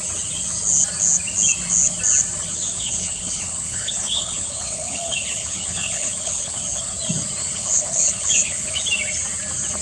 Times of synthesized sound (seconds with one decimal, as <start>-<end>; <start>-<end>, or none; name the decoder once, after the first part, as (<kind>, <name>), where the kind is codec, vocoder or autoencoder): 2.5-6.6 (codec, HILCodec); 7.4-8.8